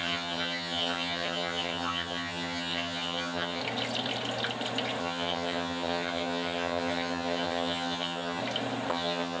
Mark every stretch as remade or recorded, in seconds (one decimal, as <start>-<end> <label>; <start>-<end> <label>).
0.0-3.6 remade; 3.6-5.0 recorded; 5.0-8.4 remade; 8.4-8.9 recorded; 8.9-9.4 remade